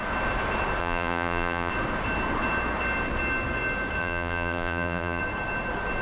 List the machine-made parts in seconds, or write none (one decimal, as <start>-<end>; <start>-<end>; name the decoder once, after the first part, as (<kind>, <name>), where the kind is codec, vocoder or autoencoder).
0.8-1.7 (vocoder, BigVGAN v2); 4.0-5.2